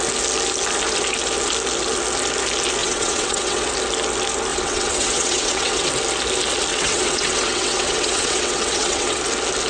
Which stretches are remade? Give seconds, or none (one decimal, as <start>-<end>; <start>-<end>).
2.8-3.7; 4.5-5.9; 6.7-9.2